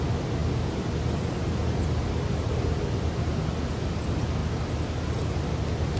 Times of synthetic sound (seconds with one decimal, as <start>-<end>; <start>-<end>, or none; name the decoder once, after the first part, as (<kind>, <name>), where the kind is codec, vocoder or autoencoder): none